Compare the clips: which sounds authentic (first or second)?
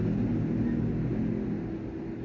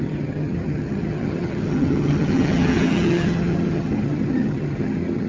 first